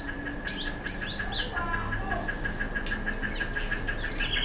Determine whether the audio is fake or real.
real